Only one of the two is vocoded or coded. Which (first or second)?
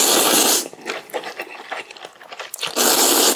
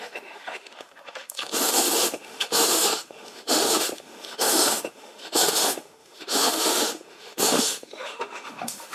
second